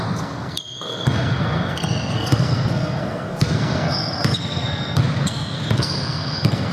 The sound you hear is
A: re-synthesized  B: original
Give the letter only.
A